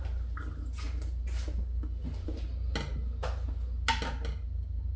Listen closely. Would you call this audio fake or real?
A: real